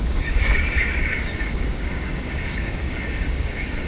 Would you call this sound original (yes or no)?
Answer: no